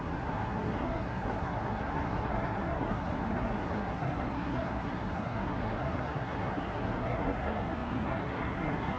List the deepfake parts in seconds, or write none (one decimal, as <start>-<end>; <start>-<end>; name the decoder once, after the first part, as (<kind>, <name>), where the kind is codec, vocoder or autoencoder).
0.0-9.0 (codec, SNAC)